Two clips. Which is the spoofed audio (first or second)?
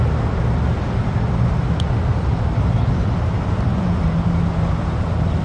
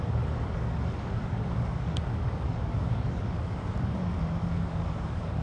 second